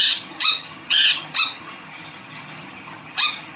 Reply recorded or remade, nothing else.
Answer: remade